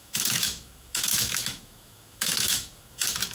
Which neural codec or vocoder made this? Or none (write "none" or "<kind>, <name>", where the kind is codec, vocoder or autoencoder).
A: autoencoder, DAC-VAE